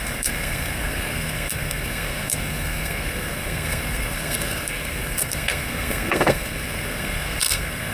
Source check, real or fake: fake